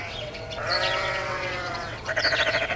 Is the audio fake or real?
fake